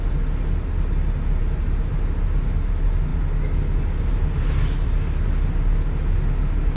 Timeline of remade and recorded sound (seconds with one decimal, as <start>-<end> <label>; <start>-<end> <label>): 0.0-6.8 recorded